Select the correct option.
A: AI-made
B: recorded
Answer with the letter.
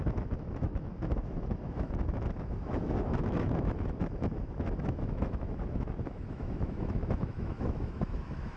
A